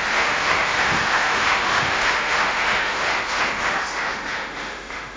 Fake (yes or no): yes